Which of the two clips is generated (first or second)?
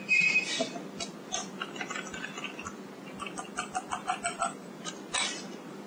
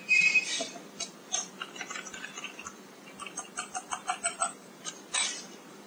second